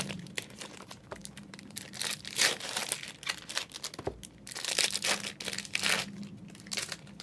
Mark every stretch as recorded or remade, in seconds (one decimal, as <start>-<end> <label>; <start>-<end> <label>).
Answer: 0.0-2.8 remade; 2.8-7.2 recorded